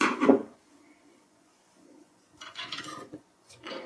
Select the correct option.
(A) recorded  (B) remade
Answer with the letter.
B